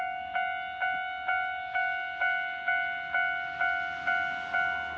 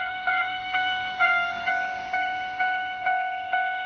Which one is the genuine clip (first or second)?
first